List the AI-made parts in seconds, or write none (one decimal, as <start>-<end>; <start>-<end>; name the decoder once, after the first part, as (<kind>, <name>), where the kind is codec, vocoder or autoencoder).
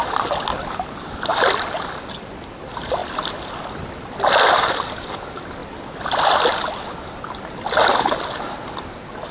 3.0-4.9 (vocoder, BigVGAN v2); 5.6-8.2